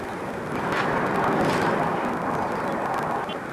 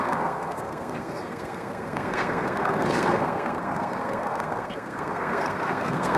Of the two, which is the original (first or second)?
first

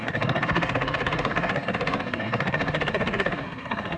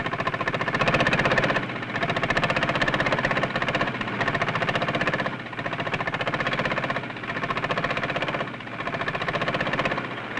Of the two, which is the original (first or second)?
second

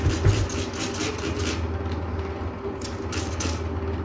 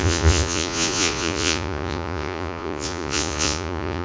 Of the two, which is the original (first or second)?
first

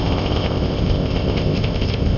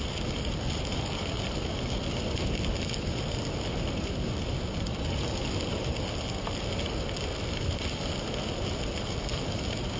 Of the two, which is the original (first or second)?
second